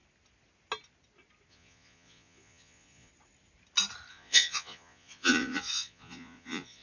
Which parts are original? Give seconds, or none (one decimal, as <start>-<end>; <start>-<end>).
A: 0.0-1.5; 3.1-4.1